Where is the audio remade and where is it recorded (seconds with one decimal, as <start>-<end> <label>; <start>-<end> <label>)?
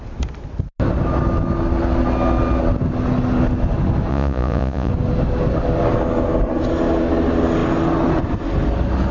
0.0-4.1 recorded; 4.1-4.9 remade; 4.9-9.1 recorded